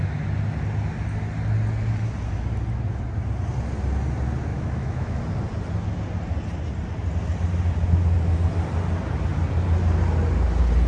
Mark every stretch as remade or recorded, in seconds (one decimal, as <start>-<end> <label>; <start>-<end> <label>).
0.0-4.5 recorded; 4.5-5.2 remade; 5.2-10.9 recorded